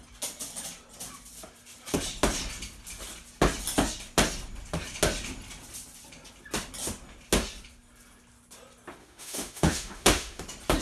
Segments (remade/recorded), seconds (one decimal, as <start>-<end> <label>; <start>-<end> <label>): 0.0-9.0 recorded; 9.0-10.4 remade; 10.4-10.8 recorded